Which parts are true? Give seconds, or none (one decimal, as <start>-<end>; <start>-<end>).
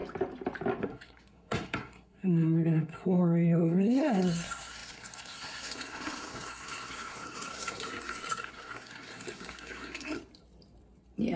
0.0-0.8; 10.2-11.4